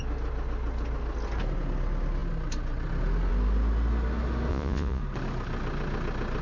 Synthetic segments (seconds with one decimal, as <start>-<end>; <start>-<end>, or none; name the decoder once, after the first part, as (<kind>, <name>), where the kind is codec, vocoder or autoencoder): 4.5-5.0 (vocoder, Vocos)